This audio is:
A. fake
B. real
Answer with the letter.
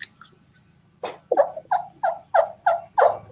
B